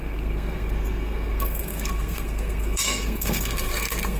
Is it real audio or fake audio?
fake